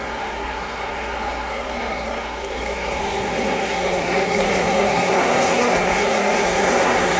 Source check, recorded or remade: remade